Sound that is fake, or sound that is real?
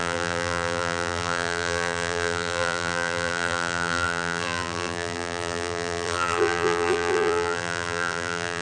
fake